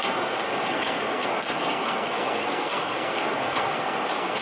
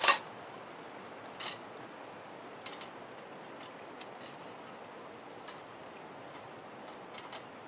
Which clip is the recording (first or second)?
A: second